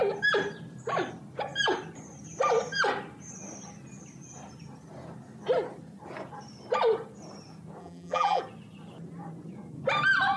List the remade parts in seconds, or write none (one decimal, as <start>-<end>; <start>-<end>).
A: 7.8-8.4

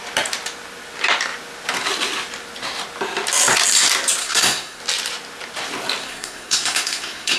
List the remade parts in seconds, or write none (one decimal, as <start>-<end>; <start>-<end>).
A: 4.2-4.8; 6.0-7.4

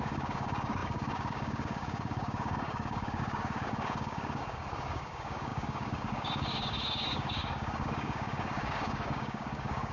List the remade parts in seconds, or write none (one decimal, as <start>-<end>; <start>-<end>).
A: 0.0-9.9